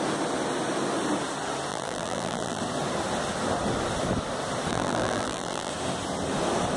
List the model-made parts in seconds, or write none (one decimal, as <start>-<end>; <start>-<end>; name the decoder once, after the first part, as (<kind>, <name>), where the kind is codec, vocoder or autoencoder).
1.7-2.6 (vocoder, BigVGAN v2); 4.7-5.7